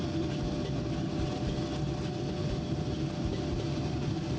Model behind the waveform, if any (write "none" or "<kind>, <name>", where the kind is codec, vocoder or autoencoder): none